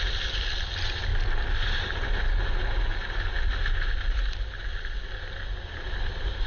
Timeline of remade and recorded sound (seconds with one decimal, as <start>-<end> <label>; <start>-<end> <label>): 0.0-6.5 recorded